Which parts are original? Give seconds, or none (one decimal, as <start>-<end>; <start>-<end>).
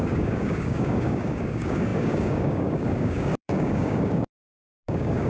none